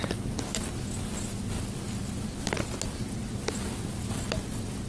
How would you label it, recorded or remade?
recorded